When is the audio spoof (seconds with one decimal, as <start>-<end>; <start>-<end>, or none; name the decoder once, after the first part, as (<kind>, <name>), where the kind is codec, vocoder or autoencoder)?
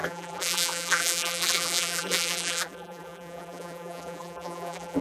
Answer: 0.0-5.0 (vocoder, BigVGAN v2)